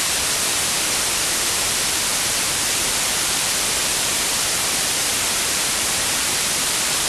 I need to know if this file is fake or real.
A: fake